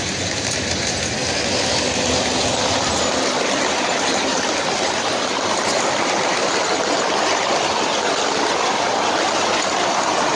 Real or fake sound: real